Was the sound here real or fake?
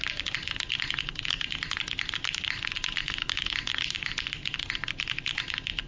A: real